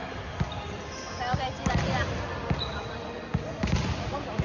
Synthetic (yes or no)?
no